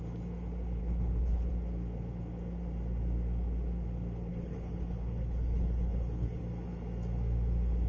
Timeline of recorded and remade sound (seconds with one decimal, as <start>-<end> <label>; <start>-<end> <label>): 0.0-0.8 recorded; 0.8-1.5 remade; 1.5-4.3 recorded; 4.3-6.4 remade; 6.4-7.9 recorded